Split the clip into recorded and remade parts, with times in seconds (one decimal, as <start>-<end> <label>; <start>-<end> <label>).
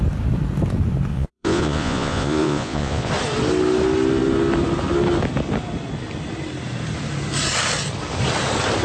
0.0-1.1 recorded; 1.1-3.1 remade; 3.1-8.8 recorded